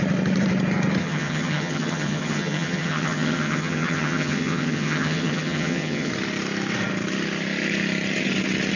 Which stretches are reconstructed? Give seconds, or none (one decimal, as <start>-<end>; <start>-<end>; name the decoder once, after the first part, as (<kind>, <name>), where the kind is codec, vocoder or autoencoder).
1.0-6.1 (vocoder, HiFi-GAN)